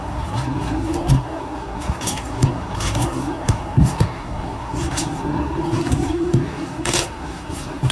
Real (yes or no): no